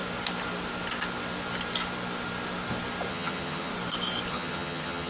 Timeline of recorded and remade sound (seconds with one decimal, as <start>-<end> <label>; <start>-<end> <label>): 0.0-3.1 recorded; 3.1-3.7 remade; 3.7-4.3 recorded; 4.3-5.1 remade